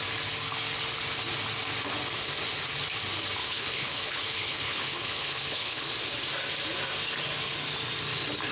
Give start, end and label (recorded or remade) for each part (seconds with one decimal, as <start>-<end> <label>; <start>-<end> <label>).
0.0-3.4 recorded; 3.4-5.9 remade; 5.9-8.5 recorded